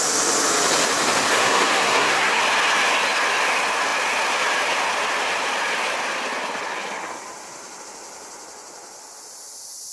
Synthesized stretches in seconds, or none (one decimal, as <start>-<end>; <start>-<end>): 1.3-2.4

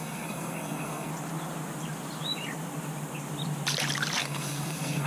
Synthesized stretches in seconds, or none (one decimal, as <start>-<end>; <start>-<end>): 0.0-1.1; 4.2-5.1

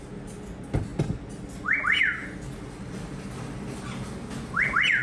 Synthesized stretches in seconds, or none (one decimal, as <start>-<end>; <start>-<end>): none

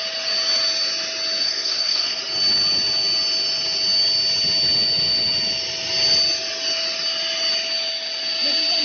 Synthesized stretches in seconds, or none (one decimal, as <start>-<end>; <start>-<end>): 1.4-2.2